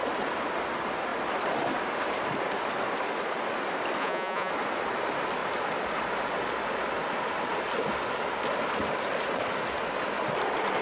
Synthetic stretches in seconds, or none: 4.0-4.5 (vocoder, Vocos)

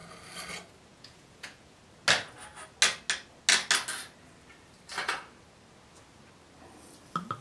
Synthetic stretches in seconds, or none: 0.9-1.8 (vocoder, Vocos)

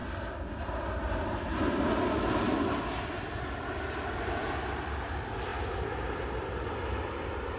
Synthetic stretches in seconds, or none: none

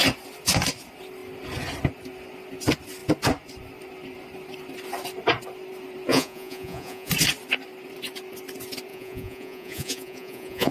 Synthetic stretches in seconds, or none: 6.1-7.1 (vocoder, Vocos); 8.9-10.7

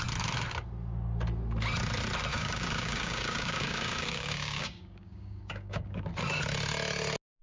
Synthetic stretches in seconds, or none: 2.3-6.1 (codec, DAC)

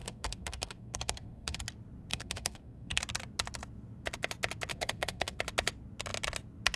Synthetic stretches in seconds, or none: 0.0-1.6 (codec, SNAC); 2.1-3.0; 4.7-5.4